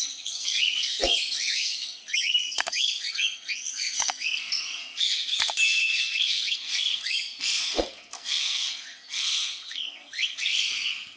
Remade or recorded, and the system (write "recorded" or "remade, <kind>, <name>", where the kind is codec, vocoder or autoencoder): remade, codec, SNAC